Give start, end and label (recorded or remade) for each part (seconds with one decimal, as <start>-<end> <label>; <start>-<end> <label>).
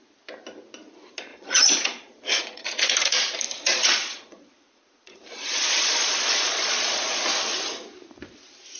0.0-1.3 recorded; 1.3-2.9 remade; 2.9-3.7 recorded; 3.7-7.2 remade; 7.2-8.8 recorded